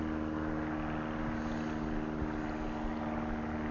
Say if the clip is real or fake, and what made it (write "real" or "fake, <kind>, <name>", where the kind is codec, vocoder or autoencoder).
real